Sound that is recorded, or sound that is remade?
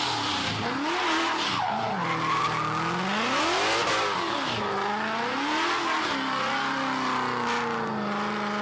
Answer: recorded